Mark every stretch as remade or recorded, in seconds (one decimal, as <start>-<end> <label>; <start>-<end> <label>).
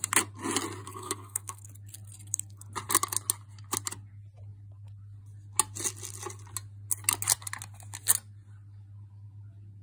0.0-0.9 recorded; 0.9-1.7 remade; 1.7-9.8 recorded